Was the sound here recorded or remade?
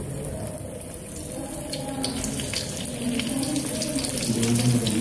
recorded